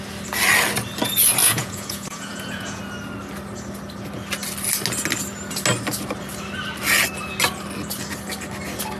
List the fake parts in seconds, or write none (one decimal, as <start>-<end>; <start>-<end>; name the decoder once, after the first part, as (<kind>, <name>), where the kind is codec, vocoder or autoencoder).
1.4-2.8 (vocoder, Vocos)